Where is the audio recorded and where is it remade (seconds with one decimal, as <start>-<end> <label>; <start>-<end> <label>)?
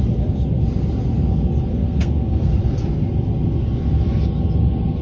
0.0-1.7 recorded; 1.7-2.6 remade; 2.6-5.0 recorded